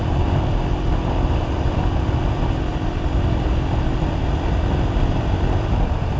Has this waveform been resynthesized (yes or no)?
no